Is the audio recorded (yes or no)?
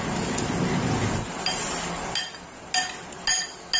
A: yes